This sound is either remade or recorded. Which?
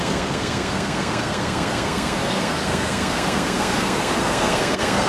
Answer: remade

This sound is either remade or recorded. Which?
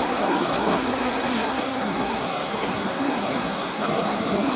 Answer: remade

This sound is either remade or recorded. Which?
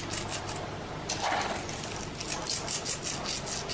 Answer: recorded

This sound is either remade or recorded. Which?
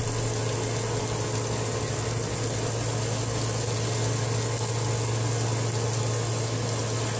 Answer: recorded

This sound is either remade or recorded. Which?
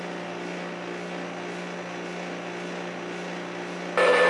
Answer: recorded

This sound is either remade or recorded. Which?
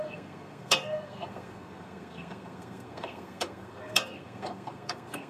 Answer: remade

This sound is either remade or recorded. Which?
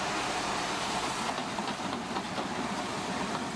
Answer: recorded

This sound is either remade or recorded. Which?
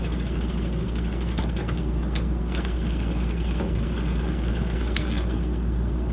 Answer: remade